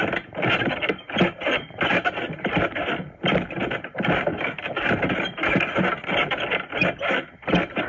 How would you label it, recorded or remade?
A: recorded